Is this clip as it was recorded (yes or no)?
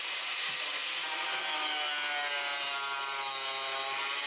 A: yes